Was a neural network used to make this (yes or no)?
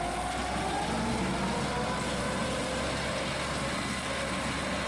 no